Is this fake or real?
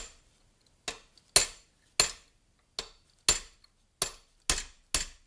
real